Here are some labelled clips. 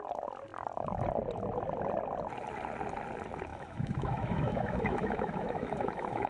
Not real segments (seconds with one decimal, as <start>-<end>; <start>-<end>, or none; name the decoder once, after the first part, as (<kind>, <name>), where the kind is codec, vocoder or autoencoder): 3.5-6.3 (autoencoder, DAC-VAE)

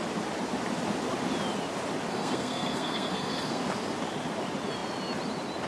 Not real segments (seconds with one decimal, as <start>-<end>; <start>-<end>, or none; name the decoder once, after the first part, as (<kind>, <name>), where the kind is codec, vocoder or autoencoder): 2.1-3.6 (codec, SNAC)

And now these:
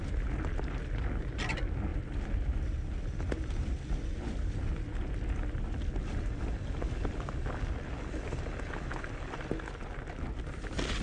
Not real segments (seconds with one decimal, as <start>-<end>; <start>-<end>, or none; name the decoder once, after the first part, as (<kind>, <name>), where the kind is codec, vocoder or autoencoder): none

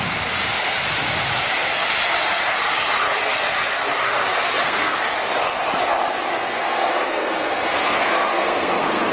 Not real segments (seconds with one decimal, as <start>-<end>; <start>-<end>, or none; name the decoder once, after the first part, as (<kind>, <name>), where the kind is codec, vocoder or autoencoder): 4.3-4.9 (codec, SNAC); 6.3-9.1

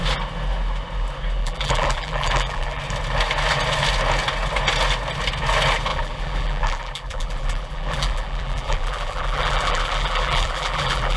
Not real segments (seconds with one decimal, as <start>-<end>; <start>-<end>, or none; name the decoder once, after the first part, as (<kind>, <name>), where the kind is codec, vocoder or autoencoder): 1.4-2.8 (vocoder, BigVGAN v2); 5.9-11.2